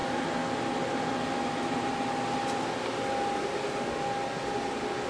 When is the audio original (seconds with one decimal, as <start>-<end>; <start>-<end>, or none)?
0.0-5.1